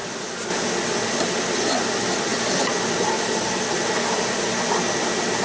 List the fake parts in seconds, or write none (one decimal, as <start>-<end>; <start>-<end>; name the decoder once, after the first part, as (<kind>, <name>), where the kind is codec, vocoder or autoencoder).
none

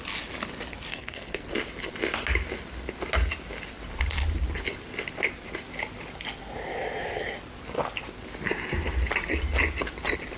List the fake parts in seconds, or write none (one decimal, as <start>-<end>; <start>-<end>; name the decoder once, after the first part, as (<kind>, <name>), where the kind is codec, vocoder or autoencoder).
0.9-1.5 (codec, SNAC)

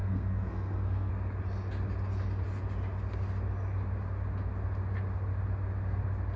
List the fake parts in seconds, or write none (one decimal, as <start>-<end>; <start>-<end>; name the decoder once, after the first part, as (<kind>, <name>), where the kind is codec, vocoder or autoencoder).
0.0-1.1 (codec, SNAC)

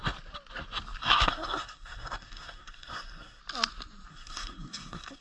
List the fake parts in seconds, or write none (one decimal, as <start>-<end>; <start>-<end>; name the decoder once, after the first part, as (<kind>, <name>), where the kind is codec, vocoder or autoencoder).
1.0-3.4 (codec, SNAC); 4.1-5.2

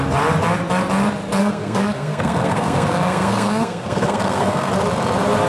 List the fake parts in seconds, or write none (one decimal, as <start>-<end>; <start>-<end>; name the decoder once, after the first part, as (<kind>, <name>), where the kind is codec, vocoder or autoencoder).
1.4-4.7 (codec, SNAC)

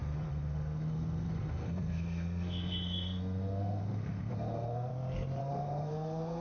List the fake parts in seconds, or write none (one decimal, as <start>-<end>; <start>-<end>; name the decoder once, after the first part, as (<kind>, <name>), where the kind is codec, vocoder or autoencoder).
0.0-4.9 (codec, SNAC); 5.4-6.4

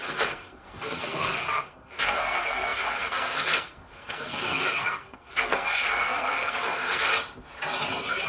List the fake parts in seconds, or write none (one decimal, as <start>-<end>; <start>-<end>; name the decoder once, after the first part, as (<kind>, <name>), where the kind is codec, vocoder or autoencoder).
0.0-7.1 (codec, SNAC)